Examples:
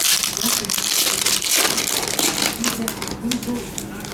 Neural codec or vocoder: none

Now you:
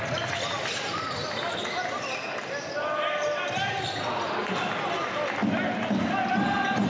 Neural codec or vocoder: none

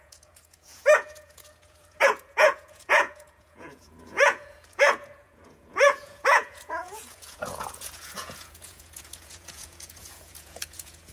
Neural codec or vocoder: vocoder, Vocos